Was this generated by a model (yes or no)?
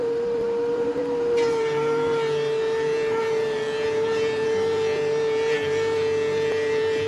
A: yes